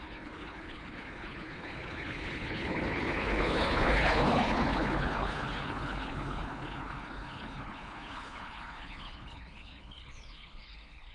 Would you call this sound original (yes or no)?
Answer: no